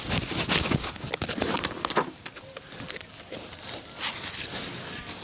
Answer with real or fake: real